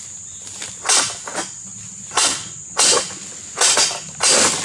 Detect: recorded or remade recorded